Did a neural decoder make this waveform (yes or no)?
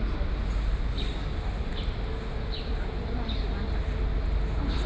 no